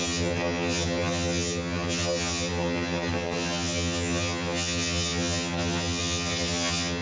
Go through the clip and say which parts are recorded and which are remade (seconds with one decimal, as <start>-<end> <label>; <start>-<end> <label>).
0.0-7.0 remade